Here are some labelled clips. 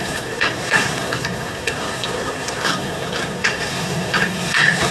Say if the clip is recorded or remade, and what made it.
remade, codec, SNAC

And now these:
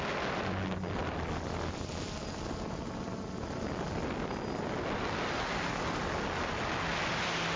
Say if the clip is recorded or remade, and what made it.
recorded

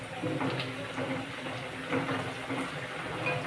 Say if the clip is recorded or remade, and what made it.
recorded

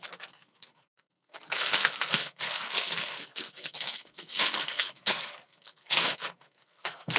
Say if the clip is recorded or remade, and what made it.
remade, codec, SNAC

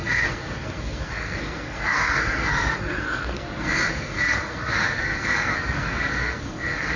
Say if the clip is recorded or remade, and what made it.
remade, codec, SNAC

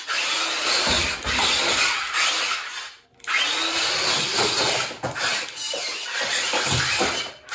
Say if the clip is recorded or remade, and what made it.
recorded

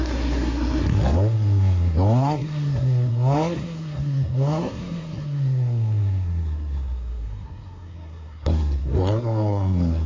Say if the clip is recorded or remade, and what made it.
remade, codec, SNAC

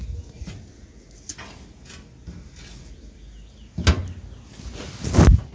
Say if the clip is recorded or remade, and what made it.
recorded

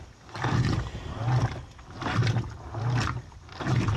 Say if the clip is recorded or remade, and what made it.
recorded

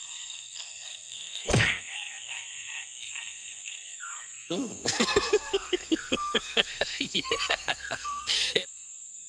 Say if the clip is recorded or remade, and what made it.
remade, codec, SNAC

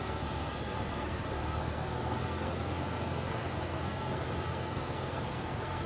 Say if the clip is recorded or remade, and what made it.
remade, codec, SNAC